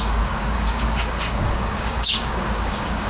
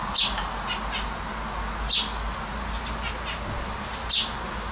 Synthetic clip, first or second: first